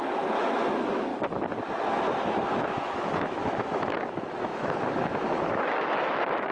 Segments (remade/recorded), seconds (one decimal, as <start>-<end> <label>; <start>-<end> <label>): 0.0-1.1 remade; 1.1-2.5 recorded; 2.5-6.5 remade